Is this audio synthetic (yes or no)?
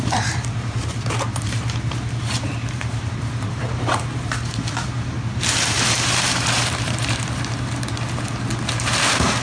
yes